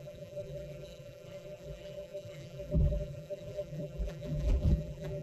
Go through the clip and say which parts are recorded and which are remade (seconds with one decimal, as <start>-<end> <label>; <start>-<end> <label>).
0.0-5.2 remade